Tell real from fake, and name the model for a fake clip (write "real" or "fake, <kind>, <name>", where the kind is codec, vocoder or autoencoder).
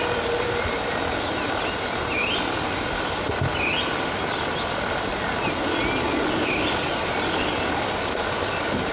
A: real